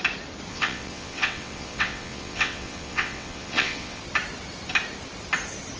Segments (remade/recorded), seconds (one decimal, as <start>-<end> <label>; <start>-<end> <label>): 0.0-0.5 recorded; 0.5-4.0 remade; 4.0-5.8 recorded